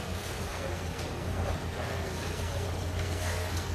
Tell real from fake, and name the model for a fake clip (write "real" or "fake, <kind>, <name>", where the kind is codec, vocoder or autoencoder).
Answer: fake, codec, SNAC